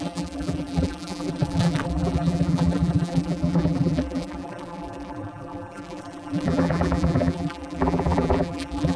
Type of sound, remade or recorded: remade